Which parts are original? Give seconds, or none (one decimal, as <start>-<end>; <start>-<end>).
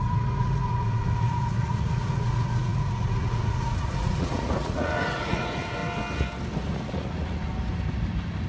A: 5.8-6.7; 7.5-8.5